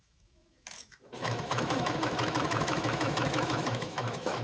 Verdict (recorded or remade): remade